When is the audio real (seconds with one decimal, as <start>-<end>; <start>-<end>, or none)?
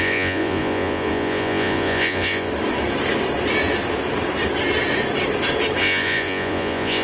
2.5-5.8